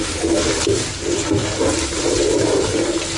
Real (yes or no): yes